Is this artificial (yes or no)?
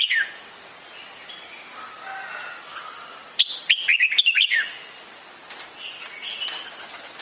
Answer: no